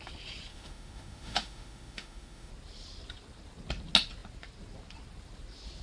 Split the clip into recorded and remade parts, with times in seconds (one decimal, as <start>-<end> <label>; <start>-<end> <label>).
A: 0.0-0.5 recorded; 0.5-2.5 remade; 2.5-5.8 recorded